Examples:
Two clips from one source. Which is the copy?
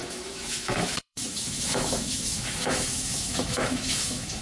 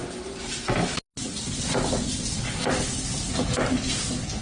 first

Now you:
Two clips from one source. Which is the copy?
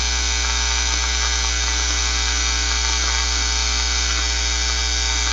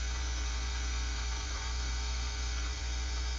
second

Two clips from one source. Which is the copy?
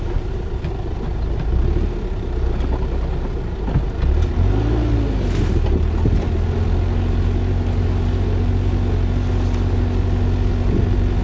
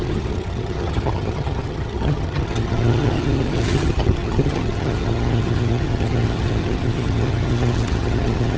second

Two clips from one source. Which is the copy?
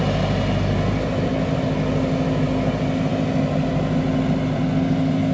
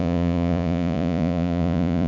second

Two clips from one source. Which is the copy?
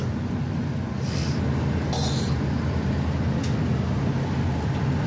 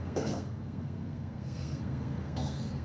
second